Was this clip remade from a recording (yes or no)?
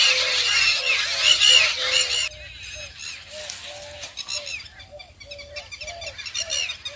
no